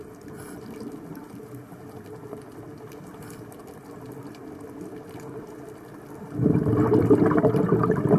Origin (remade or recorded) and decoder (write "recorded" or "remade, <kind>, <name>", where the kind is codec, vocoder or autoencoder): recorded